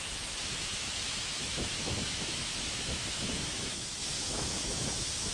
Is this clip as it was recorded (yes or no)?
no